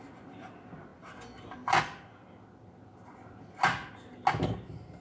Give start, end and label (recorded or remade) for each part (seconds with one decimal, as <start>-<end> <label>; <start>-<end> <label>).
0.0-5.0 recorded